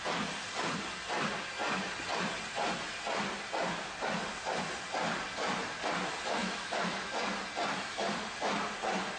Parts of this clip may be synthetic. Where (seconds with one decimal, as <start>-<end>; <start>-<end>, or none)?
6.4-7.1